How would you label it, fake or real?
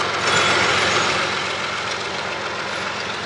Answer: real